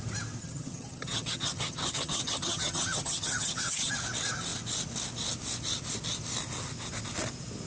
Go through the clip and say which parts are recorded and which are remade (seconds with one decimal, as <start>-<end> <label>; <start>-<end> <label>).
0.0-0.4 recorded; 0.4-3.9 remade; 3.9-7.7 recorded